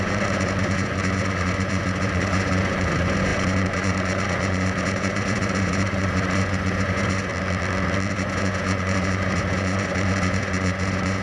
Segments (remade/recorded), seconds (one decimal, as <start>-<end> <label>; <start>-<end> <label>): 0.0-7.3 remade; 7.3-8.1 recorded; 8.1-11.2 remade